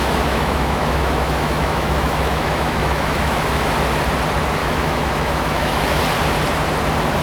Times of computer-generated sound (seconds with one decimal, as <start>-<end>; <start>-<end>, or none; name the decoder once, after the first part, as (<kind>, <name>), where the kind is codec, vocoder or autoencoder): 0.0-3.7 (autoencoder, DAC-VAE); 4.6-6.0